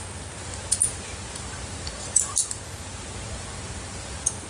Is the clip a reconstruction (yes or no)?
no